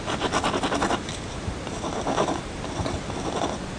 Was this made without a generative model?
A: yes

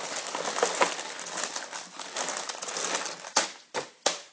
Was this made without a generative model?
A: yes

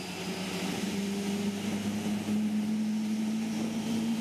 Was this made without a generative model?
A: yes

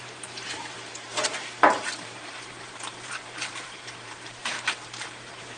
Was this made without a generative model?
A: no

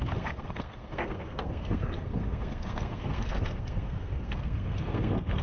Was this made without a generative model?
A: no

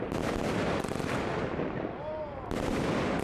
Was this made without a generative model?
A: yes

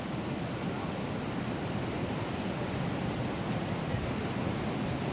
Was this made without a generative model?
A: yes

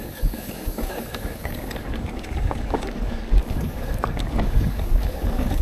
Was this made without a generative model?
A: no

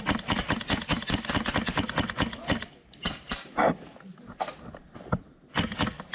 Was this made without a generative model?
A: yes